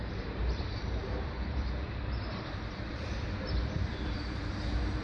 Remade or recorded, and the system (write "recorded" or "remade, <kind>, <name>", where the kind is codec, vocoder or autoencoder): remade, vocoder, BigVGAN v2